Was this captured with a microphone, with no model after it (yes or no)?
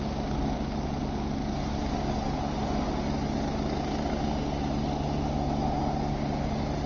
yes